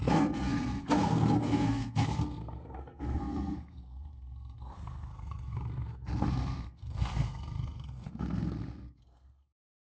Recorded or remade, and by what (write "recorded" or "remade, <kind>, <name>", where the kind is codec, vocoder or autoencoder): remade, codec, SNAC